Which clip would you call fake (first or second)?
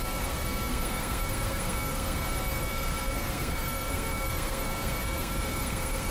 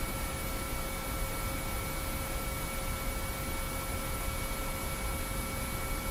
first